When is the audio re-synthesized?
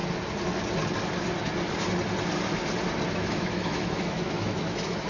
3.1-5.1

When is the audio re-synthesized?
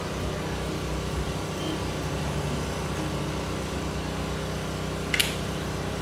5.2-6.0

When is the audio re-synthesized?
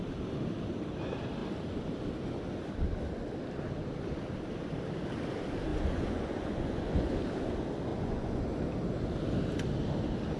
5.7-7.1; 7.9-8.5